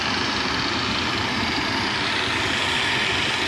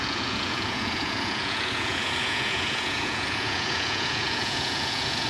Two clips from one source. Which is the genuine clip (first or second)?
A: first